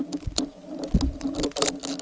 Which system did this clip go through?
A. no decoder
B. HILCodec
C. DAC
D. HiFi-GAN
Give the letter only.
A